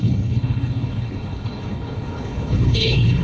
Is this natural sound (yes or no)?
no